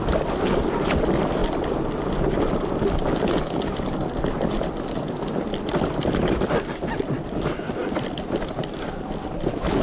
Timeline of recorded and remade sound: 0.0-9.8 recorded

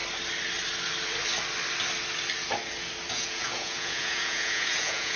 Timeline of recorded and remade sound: 0.0-3.1 recorded; 3.1-5.2 remade